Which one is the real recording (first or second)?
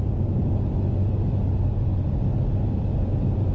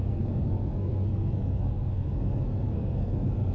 first